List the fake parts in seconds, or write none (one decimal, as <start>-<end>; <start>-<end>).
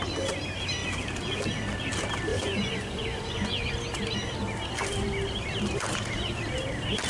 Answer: 2.3-3.7